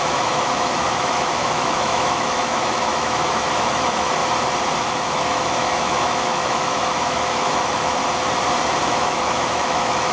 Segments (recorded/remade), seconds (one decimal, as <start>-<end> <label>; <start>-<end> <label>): 0.0-4.2 remade; 4.2-4.8 recorded; 4.8-8.0 remade; 8.0-8.8 recorded; 8.8-10.1 remade